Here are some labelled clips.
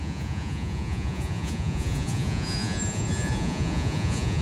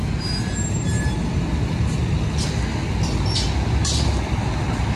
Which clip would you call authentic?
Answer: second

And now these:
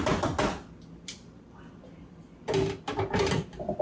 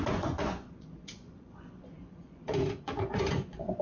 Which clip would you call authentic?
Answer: first